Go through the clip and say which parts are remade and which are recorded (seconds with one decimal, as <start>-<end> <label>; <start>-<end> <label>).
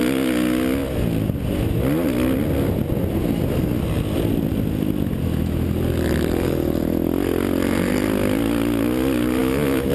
0.0-9.4 recorded; 9.4-9.9 remade